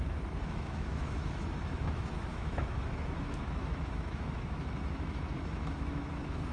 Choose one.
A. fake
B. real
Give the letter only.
A